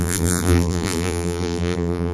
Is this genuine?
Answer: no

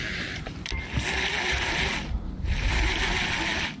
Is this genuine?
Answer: no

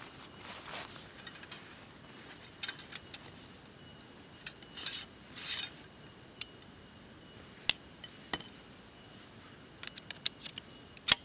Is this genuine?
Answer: yes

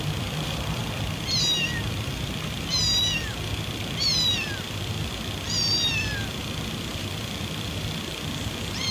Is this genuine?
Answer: no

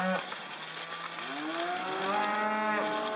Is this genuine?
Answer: yes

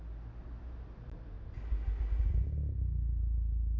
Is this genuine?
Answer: yes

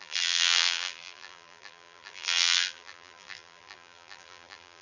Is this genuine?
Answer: no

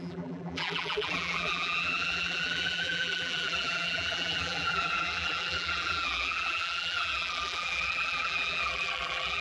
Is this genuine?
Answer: no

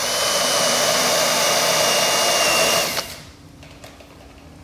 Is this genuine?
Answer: no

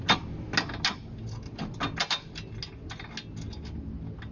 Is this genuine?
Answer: yes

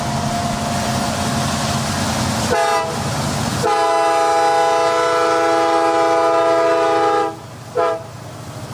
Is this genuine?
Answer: yes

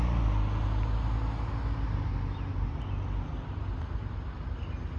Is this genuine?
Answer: yes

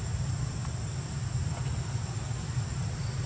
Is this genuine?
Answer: yes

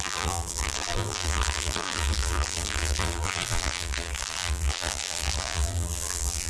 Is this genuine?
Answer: no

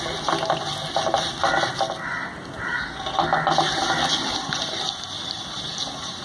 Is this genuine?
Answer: yes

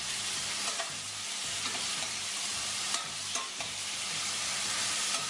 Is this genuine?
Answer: no